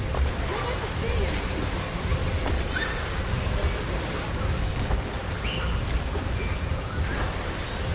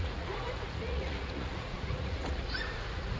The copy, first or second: second